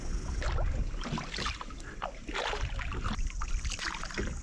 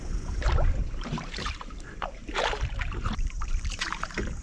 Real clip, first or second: first